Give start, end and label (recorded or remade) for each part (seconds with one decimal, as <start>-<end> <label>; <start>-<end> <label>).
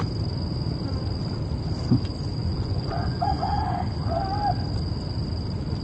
0.0-2.4 recorded; 2.4-3.6 remade; 3.6-5.8 recorded